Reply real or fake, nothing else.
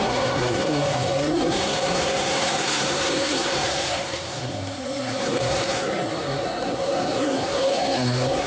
fake